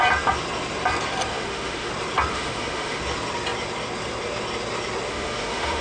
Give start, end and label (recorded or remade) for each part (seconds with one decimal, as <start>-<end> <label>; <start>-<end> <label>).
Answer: 0.0-1.3 recorded; 1.3-1.9 remade; 1.9-2.3 recorded; 2.3-3.0 remade; 3.0-5.1 recorded; 5.1-5.8 remade